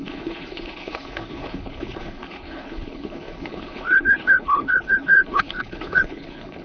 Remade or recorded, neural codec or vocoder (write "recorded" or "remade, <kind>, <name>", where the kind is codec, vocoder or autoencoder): remade, codec, HILCodec